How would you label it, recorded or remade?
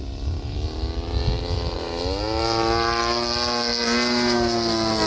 recorded